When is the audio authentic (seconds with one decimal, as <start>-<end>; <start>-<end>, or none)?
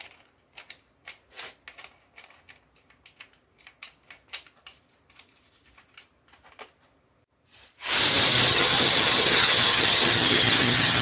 0.0-8.5